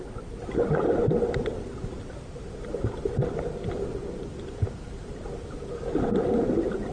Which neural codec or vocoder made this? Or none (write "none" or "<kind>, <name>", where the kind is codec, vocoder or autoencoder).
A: none